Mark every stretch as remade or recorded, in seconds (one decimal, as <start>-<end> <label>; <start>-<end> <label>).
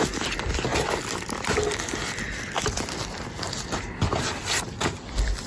0.0-5.5 recorded